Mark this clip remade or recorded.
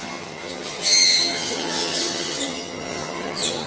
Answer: remade